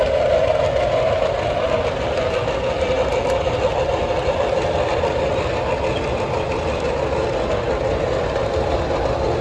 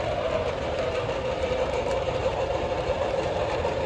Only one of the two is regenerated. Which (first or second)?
second